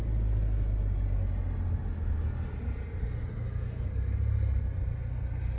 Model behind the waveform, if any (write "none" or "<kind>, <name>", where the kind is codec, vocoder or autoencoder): none